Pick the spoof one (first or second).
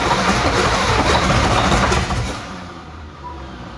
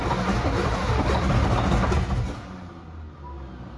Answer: first